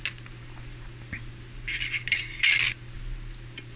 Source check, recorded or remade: recorded